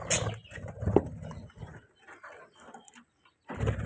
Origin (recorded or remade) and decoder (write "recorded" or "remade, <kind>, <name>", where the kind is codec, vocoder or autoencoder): recorded